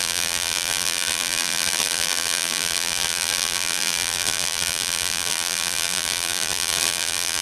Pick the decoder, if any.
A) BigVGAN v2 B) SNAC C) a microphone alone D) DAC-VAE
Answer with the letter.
A